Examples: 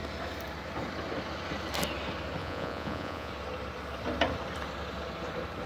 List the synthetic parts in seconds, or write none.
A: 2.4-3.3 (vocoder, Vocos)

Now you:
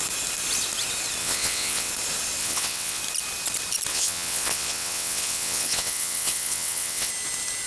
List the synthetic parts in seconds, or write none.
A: 1.2-1.9 (vocoder, WaveNeXt); 2.4-3.0; 3.9-7.1